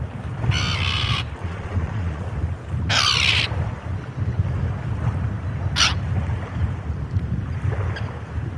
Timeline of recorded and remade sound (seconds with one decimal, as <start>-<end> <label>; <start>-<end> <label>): 0.0-1.4 recorded; 1.4-2.2 remade; 2.2-8.6 recorded